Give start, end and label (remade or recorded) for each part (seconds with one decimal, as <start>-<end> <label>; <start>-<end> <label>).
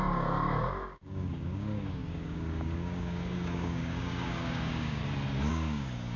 0.0-5.0 remade; 5.0-5.5 recorded; 5.5-6.2 remade